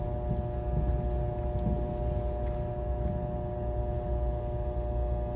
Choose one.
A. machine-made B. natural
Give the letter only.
B